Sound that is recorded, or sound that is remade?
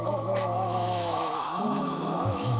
remade